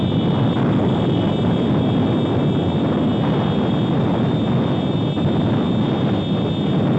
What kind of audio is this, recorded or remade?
recorded